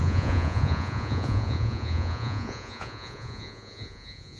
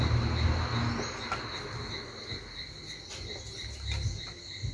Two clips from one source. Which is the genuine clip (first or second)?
second